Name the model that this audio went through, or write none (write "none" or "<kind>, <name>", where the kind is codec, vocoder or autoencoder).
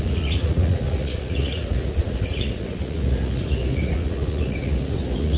vocoder, Vocos